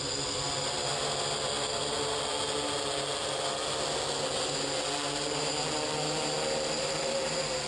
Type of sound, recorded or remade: recorded